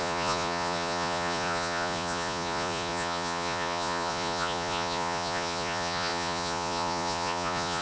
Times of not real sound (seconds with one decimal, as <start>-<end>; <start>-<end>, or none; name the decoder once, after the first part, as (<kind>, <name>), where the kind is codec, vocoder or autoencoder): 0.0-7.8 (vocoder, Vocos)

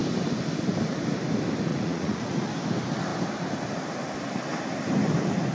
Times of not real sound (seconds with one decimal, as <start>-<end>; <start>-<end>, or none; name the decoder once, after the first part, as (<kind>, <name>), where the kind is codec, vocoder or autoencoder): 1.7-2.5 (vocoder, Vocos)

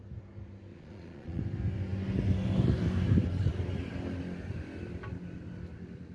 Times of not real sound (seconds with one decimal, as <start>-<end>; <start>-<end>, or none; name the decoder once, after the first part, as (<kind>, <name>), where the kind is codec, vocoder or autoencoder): 0.7-1.4 (vocoder, Vocos)

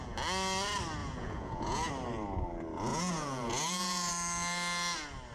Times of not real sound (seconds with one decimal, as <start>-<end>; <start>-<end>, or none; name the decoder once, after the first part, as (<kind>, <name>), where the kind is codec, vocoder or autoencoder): 1.0-1.9 (vocoder, Vocos); 2.9-4.1

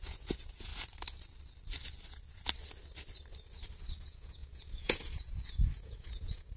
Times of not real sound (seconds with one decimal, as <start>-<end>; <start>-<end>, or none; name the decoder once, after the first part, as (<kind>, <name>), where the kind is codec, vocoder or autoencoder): 0.0-0.7 (vocoder, Vocos); 4.0-6.6

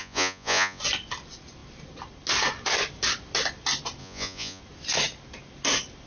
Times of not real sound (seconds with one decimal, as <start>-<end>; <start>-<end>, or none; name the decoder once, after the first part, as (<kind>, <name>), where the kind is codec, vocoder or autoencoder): 0.0-0.8 (vocoder, Vocos); 4.0-4.6

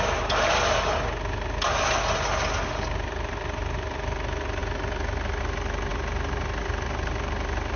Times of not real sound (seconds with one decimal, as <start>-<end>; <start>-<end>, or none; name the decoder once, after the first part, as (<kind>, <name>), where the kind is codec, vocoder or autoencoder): none